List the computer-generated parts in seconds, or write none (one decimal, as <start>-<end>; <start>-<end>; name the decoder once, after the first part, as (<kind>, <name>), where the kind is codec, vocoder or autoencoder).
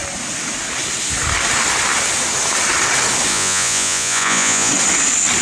3.3-4.7 (vocoder, Vocos)